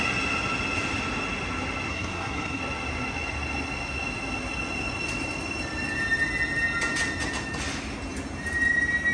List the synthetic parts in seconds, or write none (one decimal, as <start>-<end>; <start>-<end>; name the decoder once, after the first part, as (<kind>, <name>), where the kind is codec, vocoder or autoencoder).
1.9-2.6 (codec, SNAC)